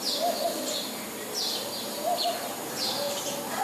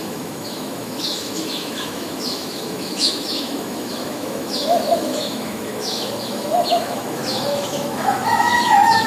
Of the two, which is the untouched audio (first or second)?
first